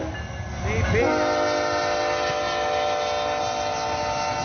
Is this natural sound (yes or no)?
yes